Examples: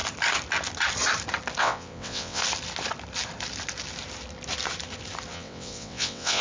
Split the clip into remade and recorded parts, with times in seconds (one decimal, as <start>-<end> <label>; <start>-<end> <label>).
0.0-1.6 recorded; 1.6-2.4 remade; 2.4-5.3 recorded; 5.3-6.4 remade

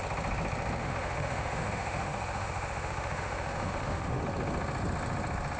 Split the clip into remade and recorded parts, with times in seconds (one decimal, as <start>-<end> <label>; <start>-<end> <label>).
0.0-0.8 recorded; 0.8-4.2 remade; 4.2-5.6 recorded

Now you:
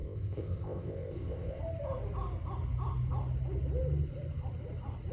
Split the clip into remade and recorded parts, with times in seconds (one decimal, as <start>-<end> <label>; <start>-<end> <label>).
0.0-1.6 remade; 1.6-5.1 recorded